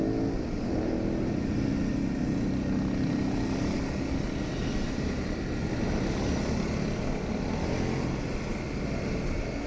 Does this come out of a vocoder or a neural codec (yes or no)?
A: no